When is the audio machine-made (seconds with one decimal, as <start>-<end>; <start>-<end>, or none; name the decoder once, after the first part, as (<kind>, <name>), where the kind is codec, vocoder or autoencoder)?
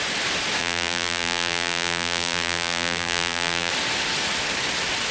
0.6-3.7 (vocoder, BigVGAN v2)